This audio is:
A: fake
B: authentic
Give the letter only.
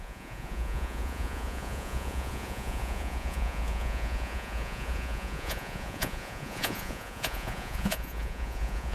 A